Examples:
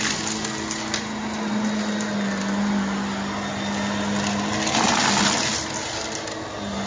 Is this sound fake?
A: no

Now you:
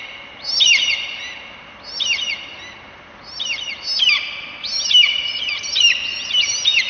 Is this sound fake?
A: yes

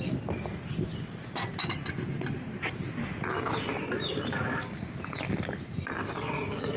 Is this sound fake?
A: no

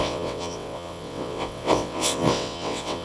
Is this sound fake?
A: yes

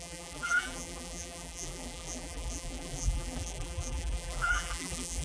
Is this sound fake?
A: yes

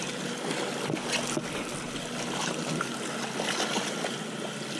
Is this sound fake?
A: no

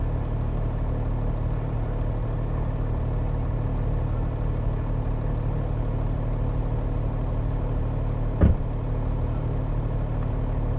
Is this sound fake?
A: no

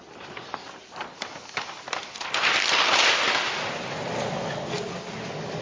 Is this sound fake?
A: no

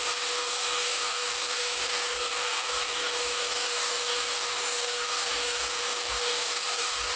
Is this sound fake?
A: yes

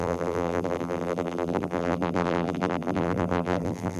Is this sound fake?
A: yes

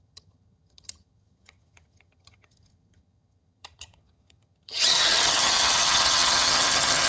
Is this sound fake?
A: yes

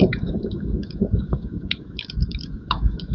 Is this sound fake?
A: yes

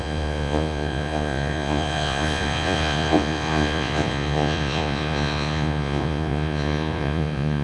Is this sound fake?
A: yes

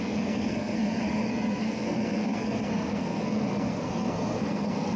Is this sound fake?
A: yes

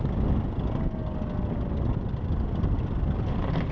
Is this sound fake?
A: no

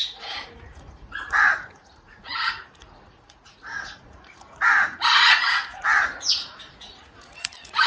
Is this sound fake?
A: yes